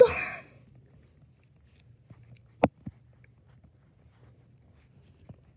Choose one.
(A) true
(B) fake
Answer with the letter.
A